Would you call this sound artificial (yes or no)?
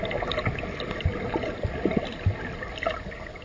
no